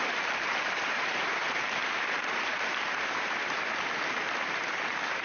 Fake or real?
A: fake